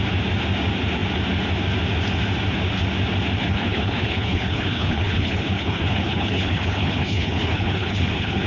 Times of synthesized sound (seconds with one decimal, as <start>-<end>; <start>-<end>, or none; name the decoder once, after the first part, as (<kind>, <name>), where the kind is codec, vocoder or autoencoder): 3.4-8.5 (codec, HILCodec)